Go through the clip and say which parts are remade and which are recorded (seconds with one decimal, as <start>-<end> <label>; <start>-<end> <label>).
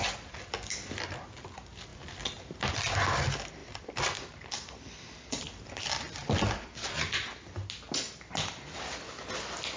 0.0-3.6 recorded; 3.6-6.9 remade; 6.9-9.8 recorded